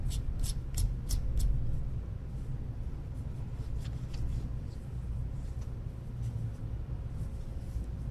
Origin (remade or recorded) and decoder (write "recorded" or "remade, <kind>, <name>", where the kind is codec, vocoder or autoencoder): recorded